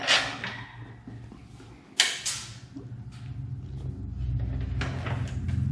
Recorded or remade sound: recorded